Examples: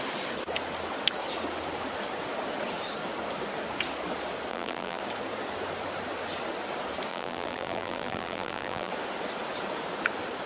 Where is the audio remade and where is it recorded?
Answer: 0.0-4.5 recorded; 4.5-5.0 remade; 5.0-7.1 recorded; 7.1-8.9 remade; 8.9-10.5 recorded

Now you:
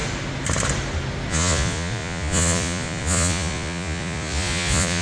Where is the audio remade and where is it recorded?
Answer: 0.0-1.3 recorded; 1.3-5.0 remade